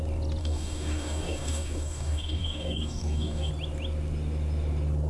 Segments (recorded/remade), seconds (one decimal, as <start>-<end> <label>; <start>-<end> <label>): 0.0-0.4 recorded; 0.4-3.5 remade; 3.5-5.1 recorded